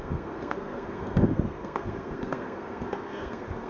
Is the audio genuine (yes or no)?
no